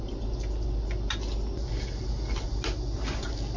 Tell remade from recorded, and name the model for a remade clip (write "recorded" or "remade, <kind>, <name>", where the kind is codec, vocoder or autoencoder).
recorded